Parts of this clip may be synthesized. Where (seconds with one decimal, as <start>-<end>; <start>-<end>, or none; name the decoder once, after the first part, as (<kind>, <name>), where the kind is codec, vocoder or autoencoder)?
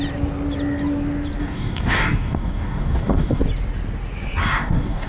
1.4-3.4 (codec, DAC); 4.4-5.1